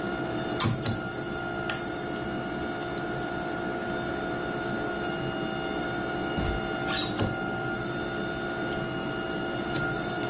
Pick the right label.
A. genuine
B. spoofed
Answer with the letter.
A